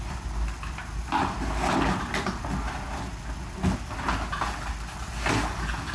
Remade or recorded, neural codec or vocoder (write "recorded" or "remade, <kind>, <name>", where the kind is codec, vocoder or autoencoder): recorded